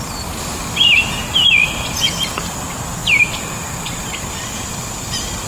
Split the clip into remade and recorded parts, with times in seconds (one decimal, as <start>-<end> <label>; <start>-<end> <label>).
0.0-1.2 remade; 1.2-1.8 recorded; 1.8-5.5 remade